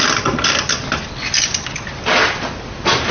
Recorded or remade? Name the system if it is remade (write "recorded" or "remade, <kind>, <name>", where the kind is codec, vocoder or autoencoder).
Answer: remade, vocoder, BigVGAN v2